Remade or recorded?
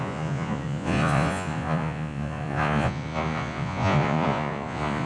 remade